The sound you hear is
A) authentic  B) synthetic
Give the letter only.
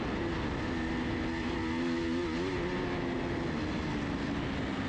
A